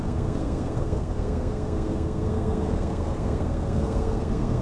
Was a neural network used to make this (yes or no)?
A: yes